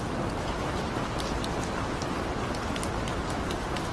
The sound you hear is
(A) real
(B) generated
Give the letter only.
A